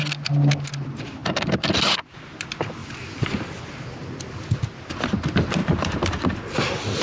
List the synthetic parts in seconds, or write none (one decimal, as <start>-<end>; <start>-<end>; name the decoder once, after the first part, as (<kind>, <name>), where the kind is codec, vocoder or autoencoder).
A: 2.8-3.7 (vocoder, BigVGAN v2); 5.6-6.3